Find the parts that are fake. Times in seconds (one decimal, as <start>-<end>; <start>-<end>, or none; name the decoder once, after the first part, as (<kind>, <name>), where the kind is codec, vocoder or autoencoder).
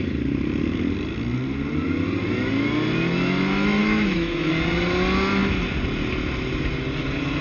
3.8-4.5 (autoencoder, DAC-VAE)